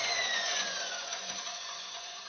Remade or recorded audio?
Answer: remade